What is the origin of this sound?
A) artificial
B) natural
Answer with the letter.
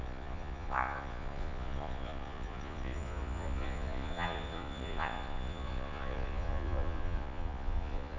A